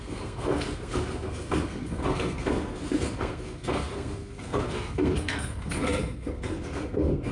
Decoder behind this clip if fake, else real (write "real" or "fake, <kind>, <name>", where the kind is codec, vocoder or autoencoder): fake, codec, SNAC